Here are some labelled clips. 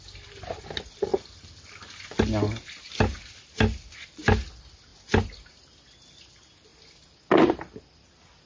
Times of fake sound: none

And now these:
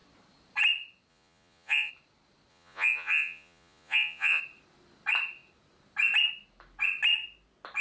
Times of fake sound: 1.1-1.9 (vocoder, Vocos); 2.5-4.4

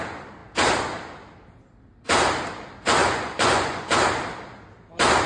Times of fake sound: 3.0-4.0 (vocoder, Vocos)

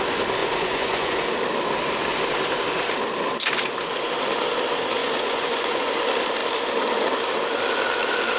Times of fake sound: 0.4-1.2 (vocoder, Vocos); 5.0-5.9

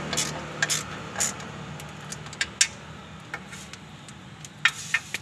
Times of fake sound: none

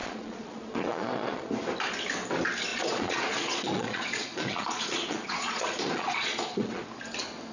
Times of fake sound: 0.0-1.5 (vocoder, Vocos); 2.7-6.8

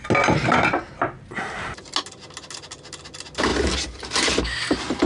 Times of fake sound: none